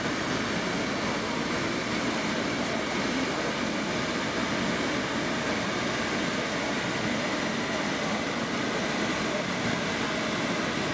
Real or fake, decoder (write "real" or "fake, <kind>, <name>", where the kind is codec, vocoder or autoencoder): real